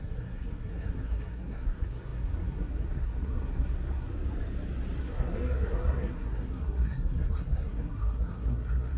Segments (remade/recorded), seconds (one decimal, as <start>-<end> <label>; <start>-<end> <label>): 0.0-4.1 remade; 4.1-5.0 recorded; 5.0-9.0 remade